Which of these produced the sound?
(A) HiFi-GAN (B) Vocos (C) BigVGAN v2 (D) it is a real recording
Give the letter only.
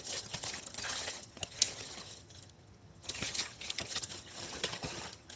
A